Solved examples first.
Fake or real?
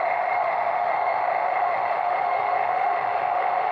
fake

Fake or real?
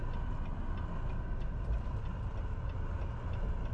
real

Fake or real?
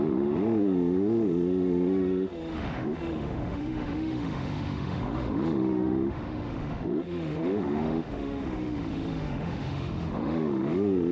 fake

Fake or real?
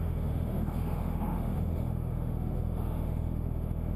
fake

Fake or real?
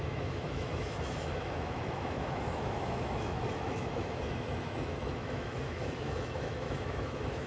fake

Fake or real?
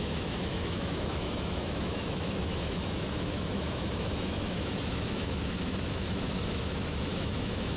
fake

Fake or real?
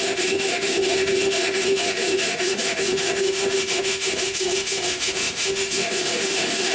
fake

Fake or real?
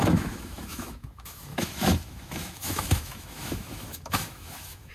fake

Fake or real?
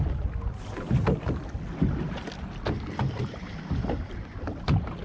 real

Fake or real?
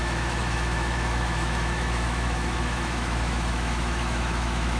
fake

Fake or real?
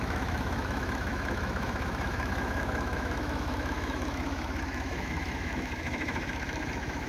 fake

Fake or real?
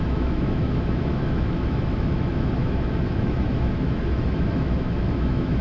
fake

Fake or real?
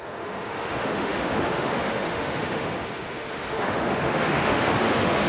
fake